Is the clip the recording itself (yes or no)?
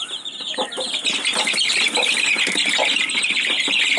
yes